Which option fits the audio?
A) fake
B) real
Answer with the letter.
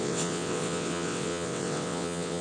A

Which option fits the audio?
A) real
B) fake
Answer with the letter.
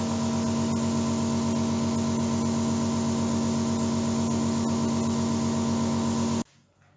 A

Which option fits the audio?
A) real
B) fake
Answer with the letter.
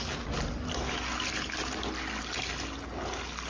A